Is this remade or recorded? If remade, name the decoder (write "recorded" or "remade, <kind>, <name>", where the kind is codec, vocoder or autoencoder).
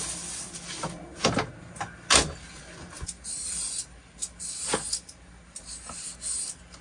recorded